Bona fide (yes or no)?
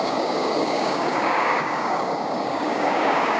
no